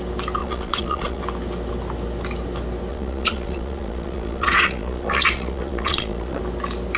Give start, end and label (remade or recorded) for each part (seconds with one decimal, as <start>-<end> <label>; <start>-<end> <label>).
0.0-0.4 recorded; 0.4-1.2 remade; 1.2-2.9 recorded; 2.9-6.4 remade; 6.4-7.0 recorded